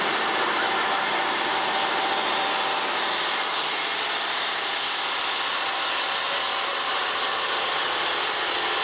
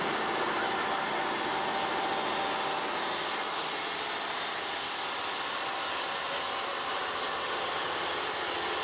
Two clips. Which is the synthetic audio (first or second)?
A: first